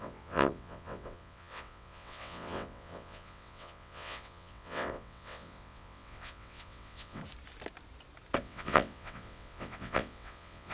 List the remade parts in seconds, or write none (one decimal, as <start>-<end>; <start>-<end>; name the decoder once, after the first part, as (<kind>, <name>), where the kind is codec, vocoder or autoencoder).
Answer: 0.0-7.2 (vocoder, WaveNeXt); 8.4-10.7